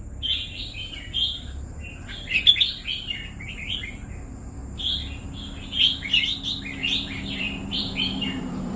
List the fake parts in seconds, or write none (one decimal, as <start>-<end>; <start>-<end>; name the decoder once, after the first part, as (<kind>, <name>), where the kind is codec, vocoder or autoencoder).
6.8-8.8 (vocoder, BigVGAN v2)